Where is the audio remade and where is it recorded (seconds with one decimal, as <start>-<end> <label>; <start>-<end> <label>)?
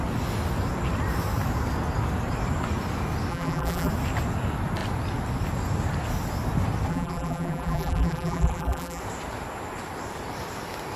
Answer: 0.0-3.3 recorded; 3.3-3.9 remade; 3.9-6.9 recorded; 6.9-9.0 remade; 9.0-11.0 recorded